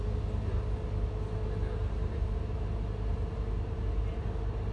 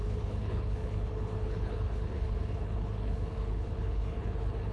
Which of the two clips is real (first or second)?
first